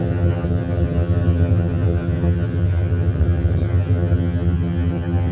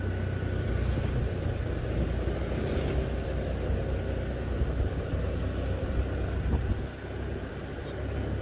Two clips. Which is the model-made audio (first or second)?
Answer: first